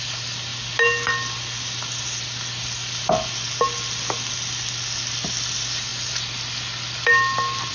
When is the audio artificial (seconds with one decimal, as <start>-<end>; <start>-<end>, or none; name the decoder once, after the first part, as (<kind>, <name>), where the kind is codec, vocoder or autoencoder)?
none